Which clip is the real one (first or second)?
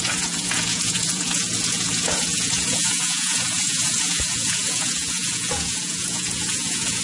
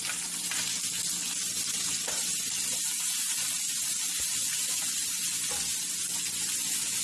second